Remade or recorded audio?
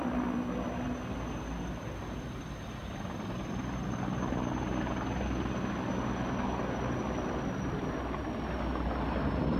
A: recorded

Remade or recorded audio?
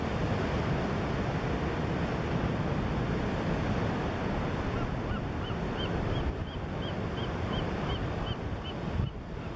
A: recorded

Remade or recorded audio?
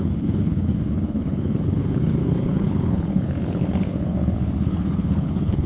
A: remade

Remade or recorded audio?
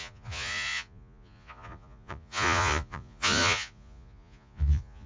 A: remade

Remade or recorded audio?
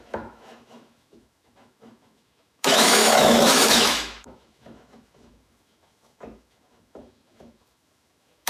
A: remade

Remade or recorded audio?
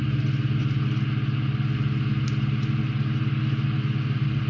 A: recorded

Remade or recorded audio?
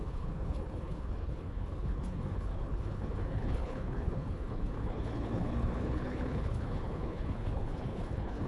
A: remade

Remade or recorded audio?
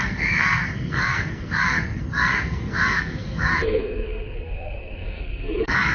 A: remade